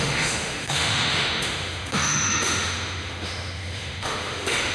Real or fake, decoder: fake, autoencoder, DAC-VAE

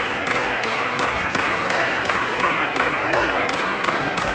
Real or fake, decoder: fake, codec, SNAC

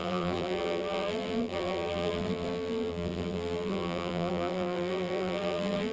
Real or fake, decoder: fake, vocoder, BigVGAN v2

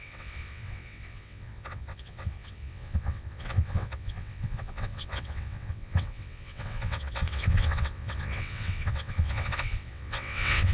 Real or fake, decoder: fake, vocoder, WaveNeXt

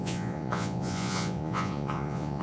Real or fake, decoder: fake, vocoder, Vocos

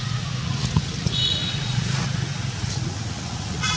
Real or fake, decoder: fake, vocoder, Vocos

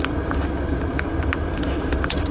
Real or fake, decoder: real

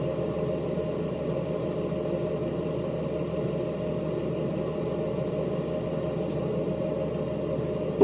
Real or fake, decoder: real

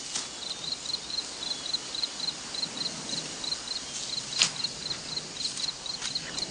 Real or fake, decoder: real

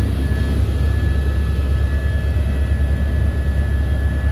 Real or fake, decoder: real